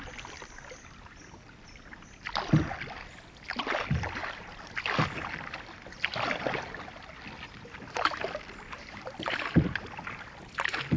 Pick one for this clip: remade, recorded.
recorded